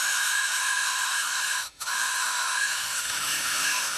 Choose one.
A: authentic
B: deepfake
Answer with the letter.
B